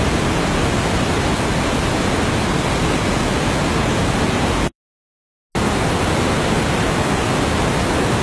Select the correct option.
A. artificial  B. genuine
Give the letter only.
B